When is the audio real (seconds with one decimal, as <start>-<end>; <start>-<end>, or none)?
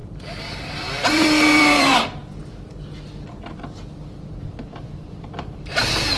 2.2-3.9